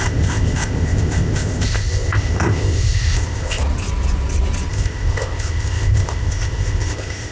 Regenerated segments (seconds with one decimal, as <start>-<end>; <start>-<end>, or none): 0.0-3.6; 4.7-7.3